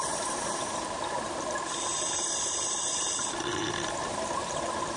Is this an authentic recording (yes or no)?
no